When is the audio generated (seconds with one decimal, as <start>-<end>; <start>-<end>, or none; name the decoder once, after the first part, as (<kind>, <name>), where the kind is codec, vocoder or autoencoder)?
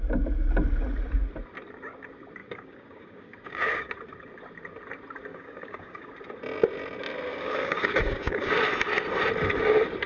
2.4-3.9 (codec, DAC); 5.3-6.1; 7.3-8.5